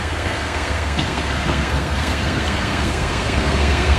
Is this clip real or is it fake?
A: fake